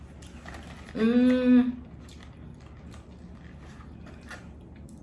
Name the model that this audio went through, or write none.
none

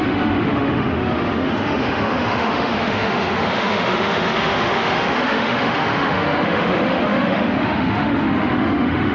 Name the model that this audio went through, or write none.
autoencoder, DAC-VAE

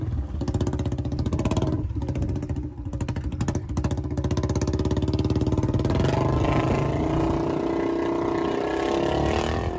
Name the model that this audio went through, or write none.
none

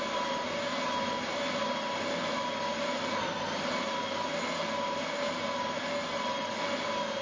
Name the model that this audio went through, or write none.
none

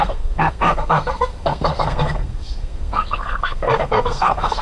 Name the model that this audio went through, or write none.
codec, SNAC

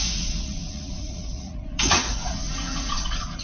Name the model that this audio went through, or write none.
vocoder, Vocos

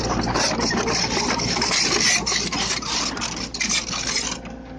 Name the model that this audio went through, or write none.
none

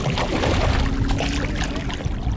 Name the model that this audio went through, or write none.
none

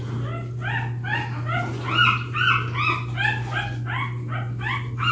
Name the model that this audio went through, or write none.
none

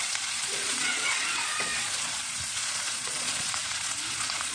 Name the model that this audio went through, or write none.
vocoder, Vocos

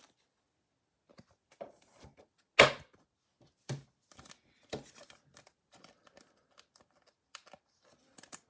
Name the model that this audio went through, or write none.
none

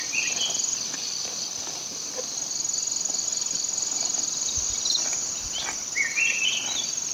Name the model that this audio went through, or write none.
vocoder, BigVGAN v2